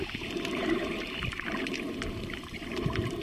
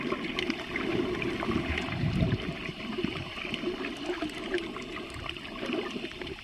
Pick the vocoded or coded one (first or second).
first